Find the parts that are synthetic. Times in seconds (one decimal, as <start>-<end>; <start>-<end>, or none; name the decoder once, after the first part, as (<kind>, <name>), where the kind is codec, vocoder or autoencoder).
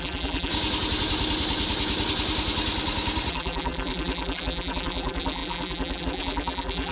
0.0-0.5 (vocoder, BigVGAN v2); 3.3-6.9